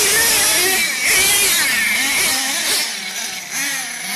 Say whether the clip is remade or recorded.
recorded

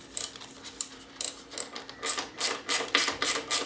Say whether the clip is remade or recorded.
remade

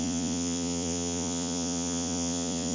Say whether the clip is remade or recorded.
remade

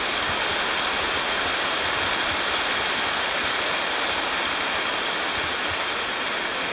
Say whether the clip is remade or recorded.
recorded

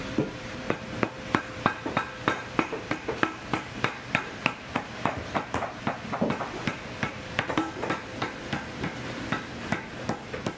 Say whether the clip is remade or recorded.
remade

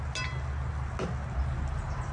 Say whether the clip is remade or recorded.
recorded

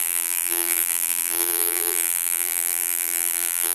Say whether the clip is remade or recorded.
remade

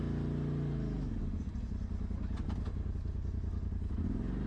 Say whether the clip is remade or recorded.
recorded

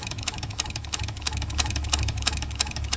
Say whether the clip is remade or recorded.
remade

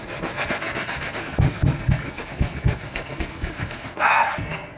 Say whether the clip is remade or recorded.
remade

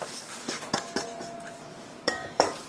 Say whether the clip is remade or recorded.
remade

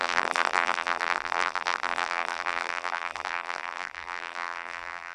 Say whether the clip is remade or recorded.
remade